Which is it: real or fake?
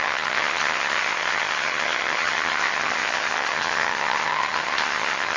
fake